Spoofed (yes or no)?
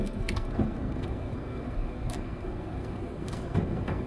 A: yes